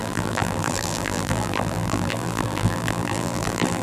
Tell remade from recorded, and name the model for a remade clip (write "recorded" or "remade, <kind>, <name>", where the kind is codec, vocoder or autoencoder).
remade, vocoder, BigVGAN v2